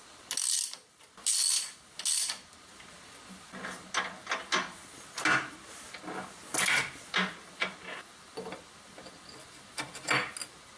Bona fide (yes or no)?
yes